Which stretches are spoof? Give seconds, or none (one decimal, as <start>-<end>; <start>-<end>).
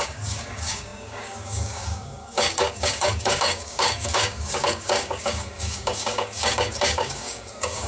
0.0-7.9